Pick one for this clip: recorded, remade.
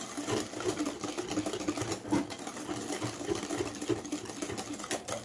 recorded